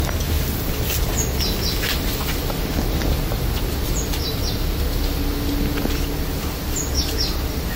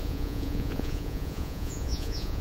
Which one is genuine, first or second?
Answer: first